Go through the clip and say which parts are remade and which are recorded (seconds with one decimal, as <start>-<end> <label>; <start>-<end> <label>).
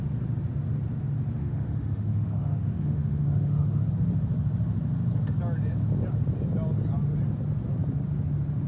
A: 0.0-1.4 recorded; 1.4-3.9 remade; 3.9-8.7 recorded